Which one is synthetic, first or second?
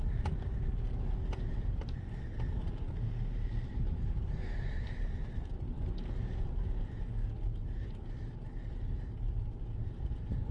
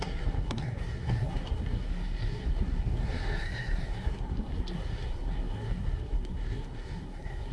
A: second